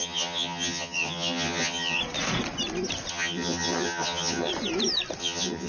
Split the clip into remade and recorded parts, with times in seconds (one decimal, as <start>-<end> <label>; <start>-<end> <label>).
0.0-2.0 remade; 2.0-3.1 recorded; 3.1-4.5 remade; 4.5-5.2 recorded; 5.2-5.7 remade